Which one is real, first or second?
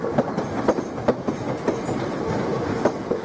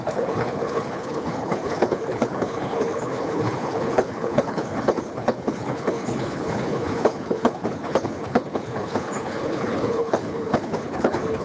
first